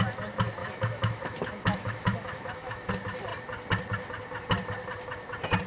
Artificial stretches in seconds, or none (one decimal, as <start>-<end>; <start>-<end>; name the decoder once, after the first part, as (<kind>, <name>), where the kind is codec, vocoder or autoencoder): 0.6-2.9 (autoencoder, DAC-VAE)